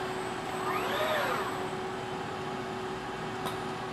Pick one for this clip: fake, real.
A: real